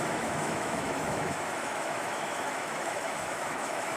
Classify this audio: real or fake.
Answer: fake